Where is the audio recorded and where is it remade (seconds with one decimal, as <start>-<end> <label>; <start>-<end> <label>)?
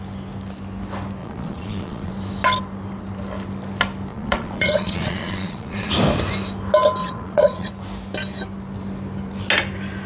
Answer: 0.0-1.2 recorded; 1.2-2.1 remade; 2.1-4.1 recorded; 4.1-5.9 remade; 5.9-7.0 recorded; 7.0-7.7 remade; 7.7-10.1 recorded